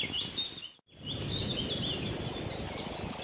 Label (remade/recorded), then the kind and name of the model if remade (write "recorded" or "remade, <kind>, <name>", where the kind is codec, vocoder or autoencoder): recorded